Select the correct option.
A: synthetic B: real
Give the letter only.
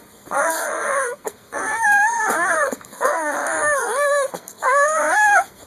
A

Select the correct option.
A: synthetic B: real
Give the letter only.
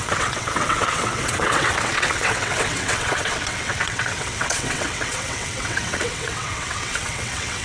A